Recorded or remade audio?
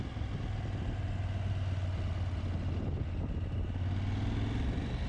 recorded